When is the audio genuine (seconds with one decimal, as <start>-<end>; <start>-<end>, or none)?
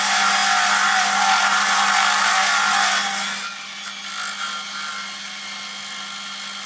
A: 0.0-6.7